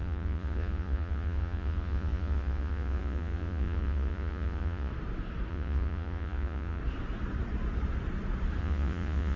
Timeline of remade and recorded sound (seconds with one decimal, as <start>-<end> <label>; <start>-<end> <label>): 0.0-4.9 remade; 4.9-5.5 recorded; 5.5-6.8 remade; 6.8-8.6 recorded; 8.6-9.4 remade